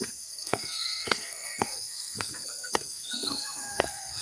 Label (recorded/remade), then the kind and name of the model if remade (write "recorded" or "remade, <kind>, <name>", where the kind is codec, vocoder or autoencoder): remade, codec, SNAC